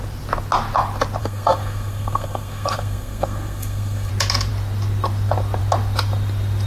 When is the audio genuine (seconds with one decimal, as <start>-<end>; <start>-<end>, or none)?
0.0-1.2; 4.1-6.7